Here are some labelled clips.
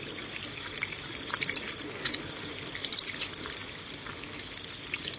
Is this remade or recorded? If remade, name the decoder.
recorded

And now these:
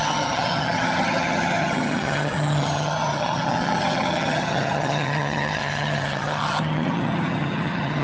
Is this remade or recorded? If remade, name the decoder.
remade, vocoder, HiFi-GAN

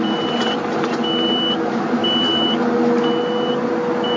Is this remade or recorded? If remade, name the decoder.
recorded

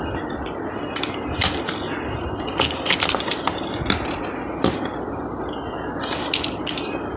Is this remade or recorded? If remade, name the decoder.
recorded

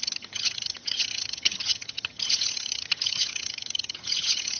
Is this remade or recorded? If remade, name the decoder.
remade, vocoder, HiFi-GAN